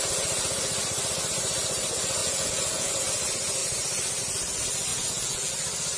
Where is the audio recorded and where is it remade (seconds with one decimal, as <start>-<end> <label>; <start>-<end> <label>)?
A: 0.0-2.2 recorded; 2.2-2.9 remade; 2.9-4.9 recorded; 4.9-5.5 remade; 5.5-6.0 recorded